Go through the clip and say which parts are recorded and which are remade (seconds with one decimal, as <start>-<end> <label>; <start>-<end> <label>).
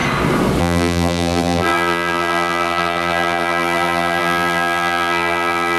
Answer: 0.0-0.6 recorded; 0.6-5.8 remade